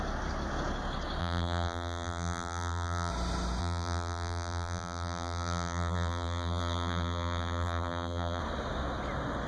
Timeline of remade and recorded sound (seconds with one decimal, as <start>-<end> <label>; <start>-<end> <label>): 0.0-1.2 recorded; 1.2-3.1 remade; 3.1-3.6 recorded; 3.6-8.4 remade; 8.4-9.5 recorded